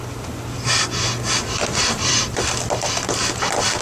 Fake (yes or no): no